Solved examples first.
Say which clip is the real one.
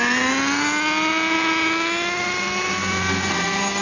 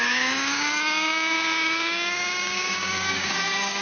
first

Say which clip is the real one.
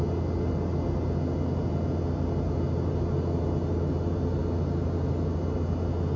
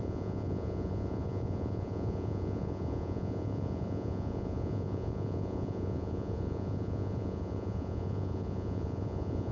first